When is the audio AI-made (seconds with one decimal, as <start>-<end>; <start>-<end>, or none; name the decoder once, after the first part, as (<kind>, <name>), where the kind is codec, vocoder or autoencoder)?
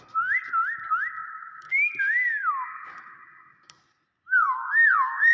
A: 1.2-1.9 (autoencoder, DAC-VAE); 2.4-3.2